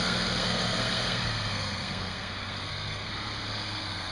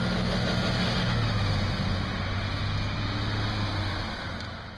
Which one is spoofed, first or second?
first